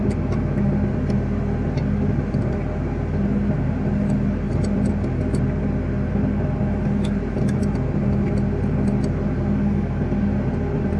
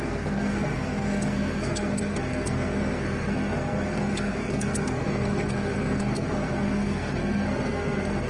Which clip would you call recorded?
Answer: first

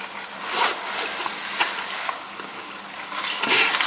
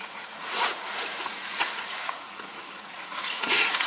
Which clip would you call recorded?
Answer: first